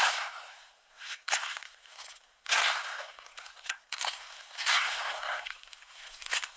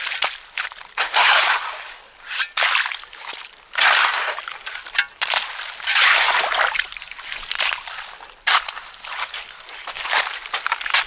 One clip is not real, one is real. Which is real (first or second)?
second